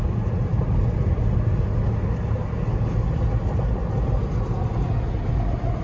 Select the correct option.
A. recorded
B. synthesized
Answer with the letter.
A